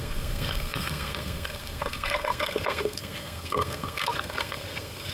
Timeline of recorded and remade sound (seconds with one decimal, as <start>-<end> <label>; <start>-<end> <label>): 0.0-5.1 remade